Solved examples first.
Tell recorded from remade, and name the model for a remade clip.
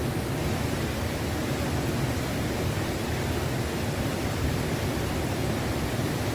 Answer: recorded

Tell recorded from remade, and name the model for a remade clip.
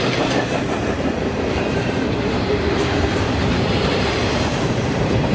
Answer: remade, vocoder, BigVGAN v2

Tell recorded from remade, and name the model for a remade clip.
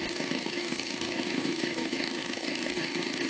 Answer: remade, codec, DAC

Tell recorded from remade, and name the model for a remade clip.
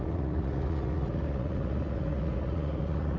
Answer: remade, vocoder, Vocos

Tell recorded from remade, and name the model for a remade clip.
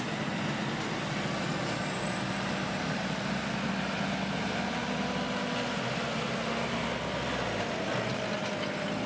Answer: recorded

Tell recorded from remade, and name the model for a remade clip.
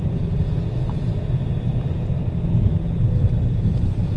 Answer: recorded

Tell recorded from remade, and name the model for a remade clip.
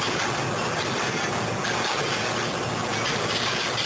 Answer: recorded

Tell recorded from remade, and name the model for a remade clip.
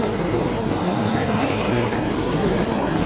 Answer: remade, codec, SNAC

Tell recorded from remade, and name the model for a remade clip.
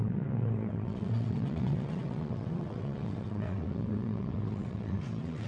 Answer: remade, vocoder, WaveNeXt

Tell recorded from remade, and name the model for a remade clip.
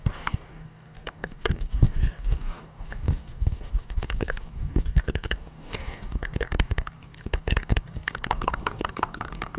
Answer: remade, codec, DAC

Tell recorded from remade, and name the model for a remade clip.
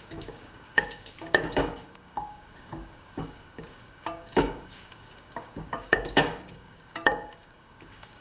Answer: remade, codec, DAC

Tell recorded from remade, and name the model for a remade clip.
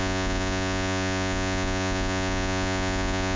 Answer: remade, vocoder, Vocos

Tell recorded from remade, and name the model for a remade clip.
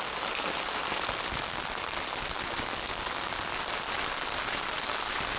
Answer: recorded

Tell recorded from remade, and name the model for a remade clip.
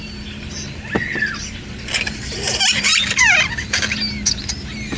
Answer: recorded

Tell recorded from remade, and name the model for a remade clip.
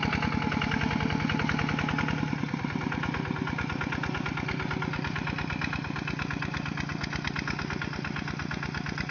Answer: recorded